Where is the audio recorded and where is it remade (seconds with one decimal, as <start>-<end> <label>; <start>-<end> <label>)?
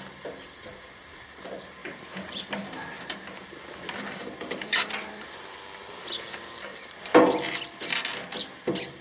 0.0-1.8 recorded; 1.8-3.6 remade; 3.6-9.0 recorded